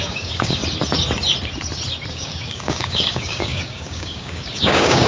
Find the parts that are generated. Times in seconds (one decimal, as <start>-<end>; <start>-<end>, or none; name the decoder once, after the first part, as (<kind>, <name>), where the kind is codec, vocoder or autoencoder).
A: 0.0-0.6 (codec, DAC); 2.1-5.1